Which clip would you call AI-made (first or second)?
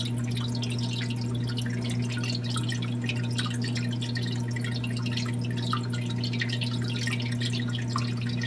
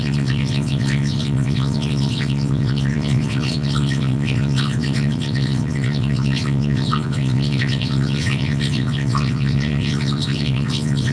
second